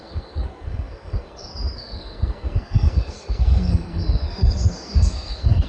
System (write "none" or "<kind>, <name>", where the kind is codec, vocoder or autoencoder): codec, SNAC